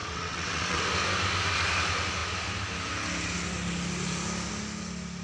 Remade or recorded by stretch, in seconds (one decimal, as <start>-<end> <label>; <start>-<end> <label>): 0.0-0.8 remade; 0.8-5.2 recorded

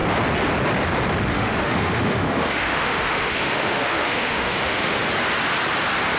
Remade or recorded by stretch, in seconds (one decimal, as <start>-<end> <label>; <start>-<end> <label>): 0.0-1.3 recorded; 1.3-5.0 remade; 5.0-6.2 recorded

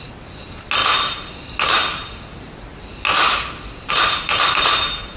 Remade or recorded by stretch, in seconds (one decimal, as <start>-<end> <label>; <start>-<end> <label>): 0.0-5.2 recorded

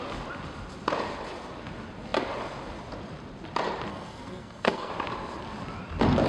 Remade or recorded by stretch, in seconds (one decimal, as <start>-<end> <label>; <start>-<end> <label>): 0.0-3.9 recorded; 3.9-4.9 remade; 4.9-6.3 recorded